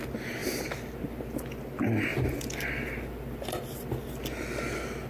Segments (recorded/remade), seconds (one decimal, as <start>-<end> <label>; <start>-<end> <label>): 0.0-0.4 recorded; 0.4-1.4 remade; 1.4-2.1 recorded; 2.1-3.8 remade; 3.8-5.1 recorded